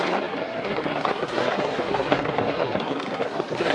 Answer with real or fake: fake